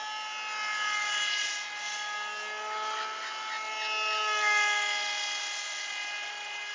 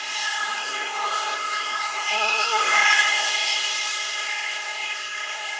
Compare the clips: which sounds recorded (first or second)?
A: first